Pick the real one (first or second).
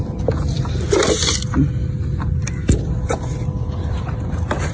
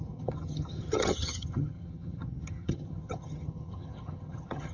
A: first